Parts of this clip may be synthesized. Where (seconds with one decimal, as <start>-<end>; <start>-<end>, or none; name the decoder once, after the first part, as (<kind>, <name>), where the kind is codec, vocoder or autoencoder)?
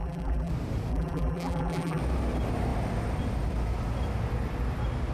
0.0-0.5 (vocoder, BigVGAN v2); 0.9-2.0